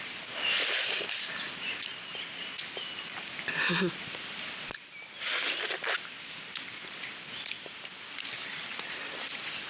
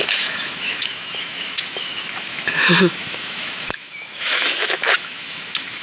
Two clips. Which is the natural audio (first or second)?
first